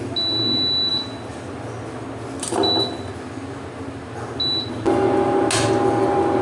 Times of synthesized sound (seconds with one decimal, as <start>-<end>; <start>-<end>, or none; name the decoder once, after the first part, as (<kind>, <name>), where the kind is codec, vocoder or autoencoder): none